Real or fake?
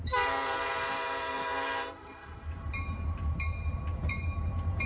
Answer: fake